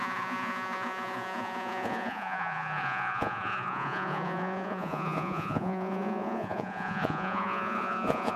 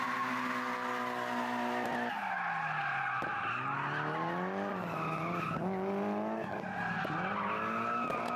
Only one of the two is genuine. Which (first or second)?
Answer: second